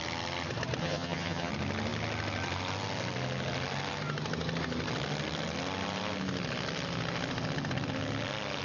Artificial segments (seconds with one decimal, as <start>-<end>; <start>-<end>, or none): 0.8-1.5